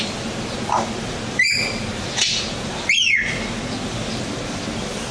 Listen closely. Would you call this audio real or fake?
real